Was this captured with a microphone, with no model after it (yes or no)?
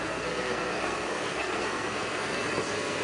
no